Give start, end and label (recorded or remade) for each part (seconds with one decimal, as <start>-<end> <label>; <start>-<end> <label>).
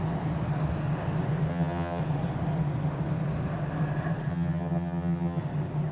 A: 0.0-1.5 recorded; 1.5-2.0 remade; 2.0-4.3 recorded; 4.3-5.4 remade; 5.4-5.9 recorded